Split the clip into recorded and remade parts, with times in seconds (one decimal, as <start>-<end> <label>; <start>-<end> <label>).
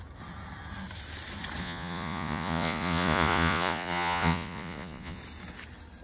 0.0-1.6 recorded; 1.6-5.2 remade; 5.2-6.0 recorded